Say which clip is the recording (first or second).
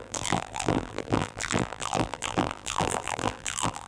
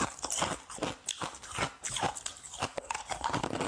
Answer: second